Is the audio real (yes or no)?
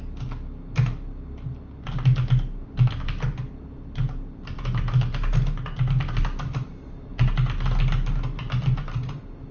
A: yes